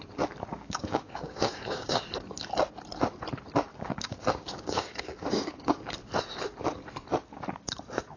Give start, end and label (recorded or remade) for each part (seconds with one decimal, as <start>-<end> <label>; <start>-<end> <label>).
0.0-0.5 recorded; 0.5-2.0 remade; 2.0-3.7 recorded; 3.7-5.8 remade; 5.8-8.2 recorded